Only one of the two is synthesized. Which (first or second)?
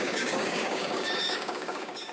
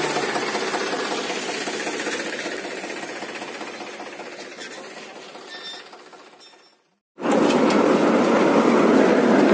first